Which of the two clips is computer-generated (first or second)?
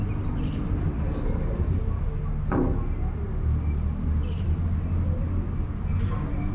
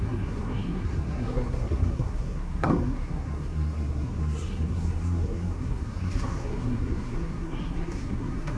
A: second